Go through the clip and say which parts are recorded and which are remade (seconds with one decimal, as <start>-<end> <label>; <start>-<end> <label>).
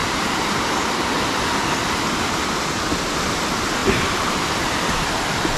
0.0-1.6 remade; 1.6-3.8 recorded; 3.8-5.1 remade; 5.1-5.6 recorded